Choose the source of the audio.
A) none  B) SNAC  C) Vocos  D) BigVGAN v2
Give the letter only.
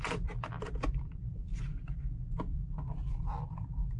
D